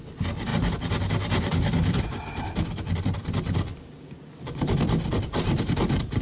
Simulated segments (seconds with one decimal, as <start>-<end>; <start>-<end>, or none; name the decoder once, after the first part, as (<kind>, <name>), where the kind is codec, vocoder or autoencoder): 3.7-6.2 (vocoder, BigVGAN v2)